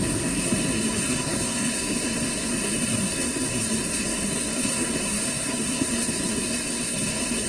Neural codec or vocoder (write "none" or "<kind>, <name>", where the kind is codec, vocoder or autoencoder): codec, SNAC